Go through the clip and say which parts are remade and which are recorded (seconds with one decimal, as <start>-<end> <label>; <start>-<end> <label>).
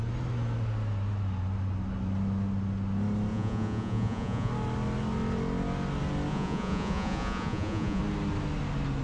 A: 0.0-3.3 recorded; 3.3-4.5 remade; 4.5-6.3 recorded; 6.3-8.0 remade; 8.0-9.0 recorded